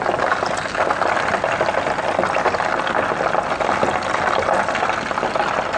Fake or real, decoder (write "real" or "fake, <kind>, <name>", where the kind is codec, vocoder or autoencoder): real